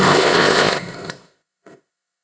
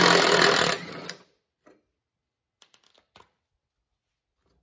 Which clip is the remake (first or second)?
first